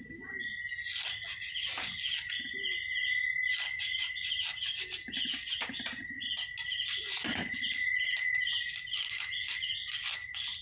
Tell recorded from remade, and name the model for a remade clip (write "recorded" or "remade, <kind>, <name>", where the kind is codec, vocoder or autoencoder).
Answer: recorded